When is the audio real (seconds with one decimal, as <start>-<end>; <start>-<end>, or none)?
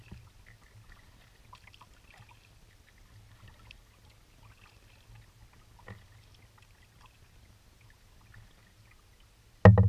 0.0-9.9